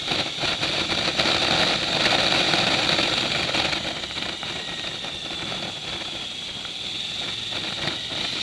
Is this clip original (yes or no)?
yes